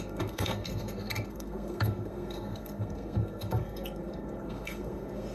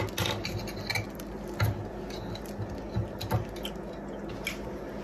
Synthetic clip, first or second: first